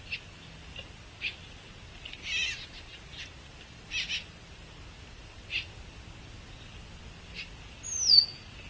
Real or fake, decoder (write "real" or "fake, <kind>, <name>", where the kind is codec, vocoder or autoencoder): real